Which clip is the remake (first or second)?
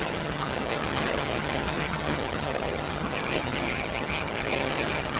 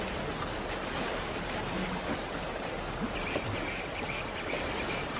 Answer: first